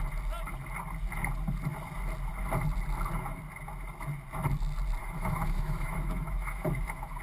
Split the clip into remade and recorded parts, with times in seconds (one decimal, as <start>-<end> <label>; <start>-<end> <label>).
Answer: 0.0-5.0 recorded; 5.0-7.2 remade